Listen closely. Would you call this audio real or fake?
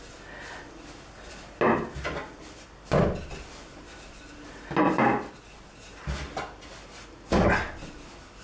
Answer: real